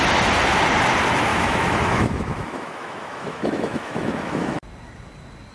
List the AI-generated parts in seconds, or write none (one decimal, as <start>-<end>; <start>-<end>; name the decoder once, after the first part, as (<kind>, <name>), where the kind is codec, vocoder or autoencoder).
1.3-4.6 (autoencoder, DAC-VAE)

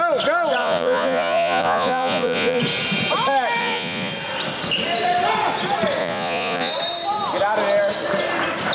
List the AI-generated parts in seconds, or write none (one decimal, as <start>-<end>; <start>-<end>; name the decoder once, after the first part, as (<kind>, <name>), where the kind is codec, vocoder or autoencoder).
0.6-2.6 (vocoder, Vocos); 3.6-4.1; 6.0-6.7

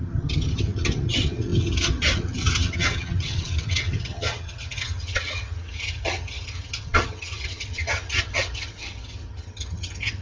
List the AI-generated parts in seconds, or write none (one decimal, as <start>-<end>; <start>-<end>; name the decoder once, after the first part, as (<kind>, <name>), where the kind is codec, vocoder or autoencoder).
0.0-10.2 (vocoder, HiFi-GAN)

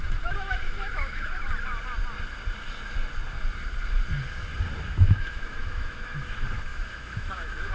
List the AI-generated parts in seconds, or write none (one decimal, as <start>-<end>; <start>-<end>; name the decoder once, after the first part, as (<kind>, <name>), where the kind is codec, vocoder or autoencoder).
0.0-1.4 (autoencoder, DAC-VAE); 4.9-7.7

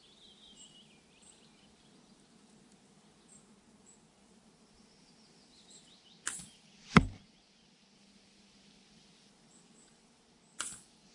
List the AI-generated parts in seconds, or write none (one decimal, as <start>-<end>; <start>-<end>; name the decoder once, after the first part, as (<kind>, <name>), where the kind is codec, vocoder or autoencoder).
none

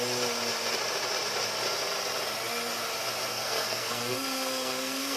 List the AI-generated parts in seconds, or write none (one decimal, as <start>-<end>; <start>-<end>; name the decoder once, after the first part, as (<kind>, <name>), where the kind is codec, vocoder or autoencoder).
3.3-5.2 (codec, SNAC)

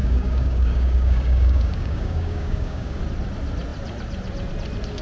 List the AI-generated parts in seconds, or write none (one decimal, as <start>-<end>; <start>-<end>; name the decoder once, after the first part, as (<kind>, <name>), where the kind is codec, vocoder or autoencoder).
0.0-3.0 (codec, DAC)

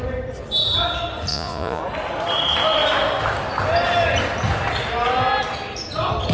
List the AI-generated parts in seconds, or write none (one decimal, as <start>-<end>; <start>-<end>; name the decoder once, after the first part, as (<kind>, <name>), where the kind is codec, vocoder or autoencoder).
1.3-1.8 (vocoder, Vocos)